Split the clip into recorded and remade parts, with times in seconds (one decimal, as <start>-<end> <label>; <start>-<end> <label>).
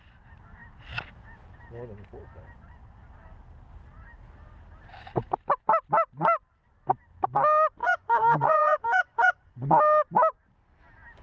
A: 0.0-7.8 recorded; 7.8-9.8 remade; 9.8-11.2 recorded